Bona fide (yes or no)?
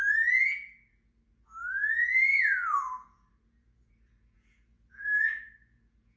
no